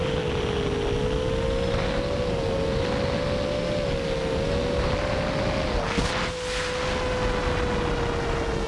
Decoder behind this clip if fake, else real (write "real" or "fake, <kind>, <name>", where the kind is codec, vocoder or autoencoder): real